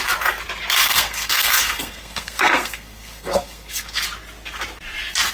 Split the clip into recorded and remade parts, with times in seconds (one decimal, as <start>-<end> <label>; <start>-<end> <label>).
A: 0.0-0.8 recorded; 0.8-4.0 remade; 4.0-5.3 recorded